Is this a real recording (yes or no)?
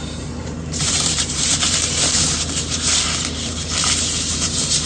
no